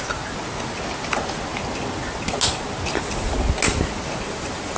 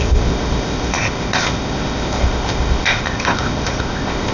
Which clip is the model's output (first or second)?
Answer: second